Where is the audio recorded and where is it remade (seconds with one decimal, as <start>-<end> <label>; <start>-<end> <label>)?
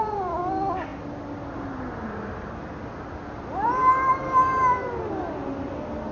0.0-6.1 recorded